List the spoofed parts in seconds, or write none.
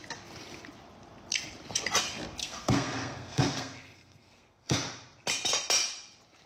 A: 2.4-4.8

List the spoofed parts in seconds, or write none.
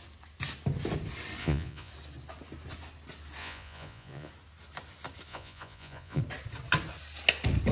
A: 1.4-1.9; 3.4-4.3; 5.3-6.2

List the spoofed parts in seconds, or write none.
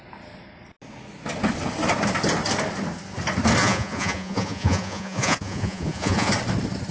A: 3.6-6.3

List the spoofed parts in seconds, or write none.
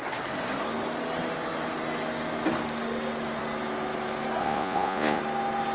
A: 4.4-5.2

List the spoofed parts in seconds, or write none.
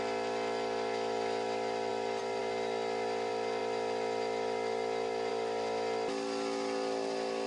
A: none